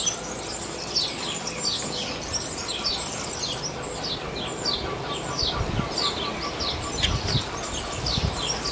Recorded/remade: recorded